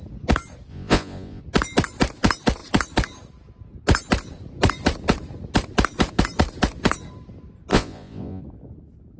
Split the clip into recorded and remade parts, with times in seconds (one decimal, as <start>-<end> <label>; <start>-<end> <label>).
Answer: 0.0-0.7 recorded; 0.7-1.4 remade; 1.4-7.7 recorded; 7.7-8.4 remade; 8.4-9.2 recorded